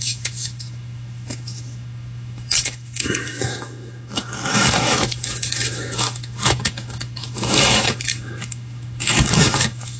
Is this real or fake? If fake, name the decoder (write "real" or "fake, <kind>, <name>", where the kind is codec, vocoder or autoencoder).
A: fake, autoencoder, DAC-VAE